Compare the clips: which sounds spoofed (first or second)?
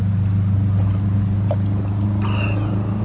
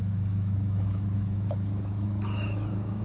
second